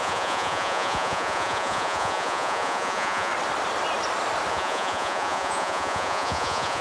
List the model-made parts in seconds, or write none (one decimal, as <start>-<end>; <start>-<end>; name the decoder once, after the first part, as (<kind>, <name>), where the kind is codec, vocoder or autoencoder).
0.0-3.3 (vocoder, Vocos); 4.5-6.8